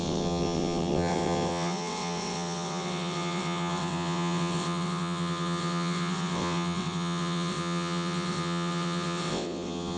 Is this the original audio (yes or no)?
no